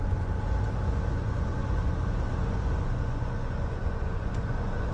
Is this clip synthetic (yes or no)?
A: yes